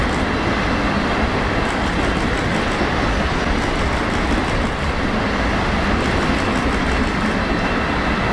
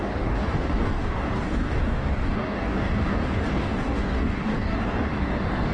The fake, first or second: second